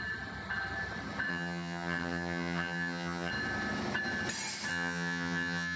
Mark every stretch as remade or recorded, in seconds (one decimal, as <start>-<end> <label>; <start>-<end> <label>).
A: 0.0-1.3 recorded; 1.3-3.3 remade; 3.3-4.7 recorded; 4.7-5.8 remade